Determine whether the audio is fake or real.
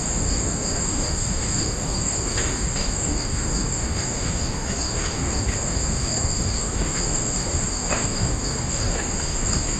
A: fake